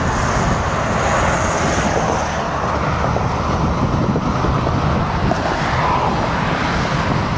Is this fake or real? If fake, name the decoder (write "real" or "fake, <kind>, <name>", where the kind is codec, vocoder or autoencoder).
real